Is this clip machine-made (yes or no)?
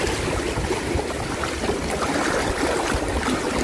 no